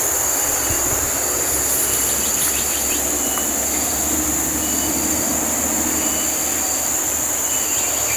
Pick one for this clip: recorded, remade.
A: recorded